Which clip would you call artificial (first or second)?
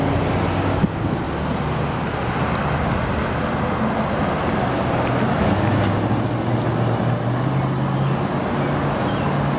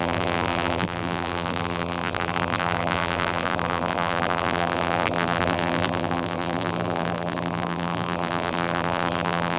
second